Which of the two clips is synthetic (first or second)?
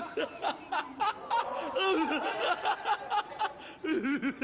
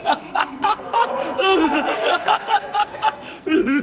second